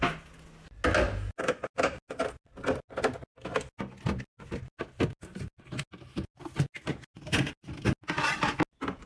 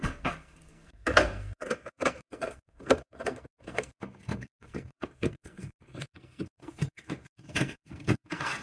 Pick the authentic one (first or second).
first